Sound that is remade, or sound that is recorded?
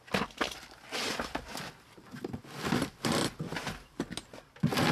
recorded